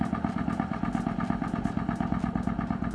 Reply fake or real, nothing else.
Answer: real